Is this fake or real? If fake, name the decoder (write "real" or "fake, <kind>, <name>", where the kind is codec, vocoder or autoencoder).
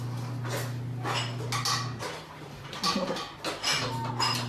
real